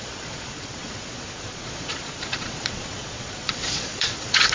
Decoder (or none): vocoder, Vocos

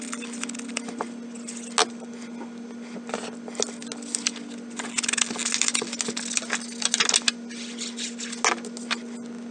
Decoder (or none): none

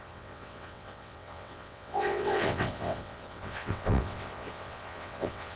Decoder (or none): vocoder, WaveNeXt